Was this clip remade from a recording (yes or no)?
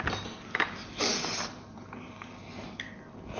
no